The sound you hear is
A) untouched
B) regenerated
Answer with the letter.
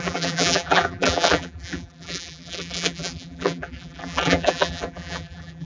B